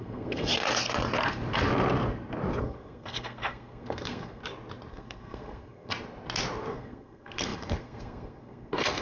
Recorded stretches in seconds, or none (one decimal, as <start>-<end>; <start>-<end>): 0.5-2.6; 4.4-4.9; 5.9-6.7